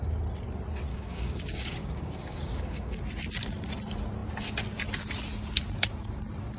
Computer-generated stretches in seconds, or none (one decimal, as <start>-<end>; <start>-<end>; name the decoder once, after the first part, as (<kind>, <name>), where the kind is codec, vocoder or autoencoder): 0.9-3.0 (codec, DAC)